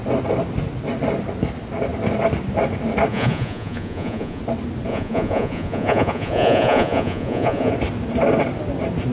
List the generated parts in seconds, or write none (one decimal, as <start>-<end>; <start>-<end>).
3.1-4.4; 4.9-7.7